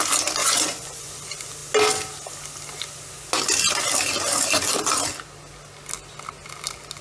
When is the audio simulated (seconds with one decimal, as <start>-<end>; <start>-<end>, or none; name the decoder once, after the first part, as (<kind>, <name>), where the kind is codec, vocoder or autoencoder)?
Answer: 0.4-1.1 (vocoder, Vocos)